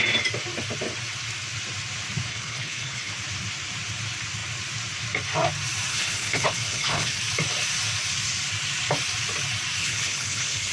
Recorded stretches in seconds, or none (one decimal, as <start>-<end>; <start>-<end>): 0.0-2.3; 3.1-5.9; 7.2-9.8